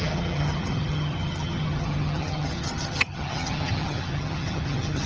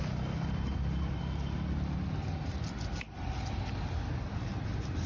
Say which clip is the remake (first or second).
first